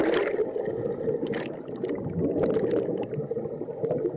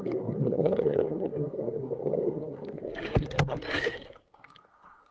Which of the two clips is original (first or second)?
first